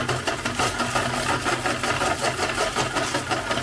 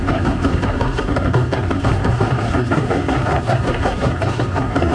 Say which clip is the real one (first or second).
first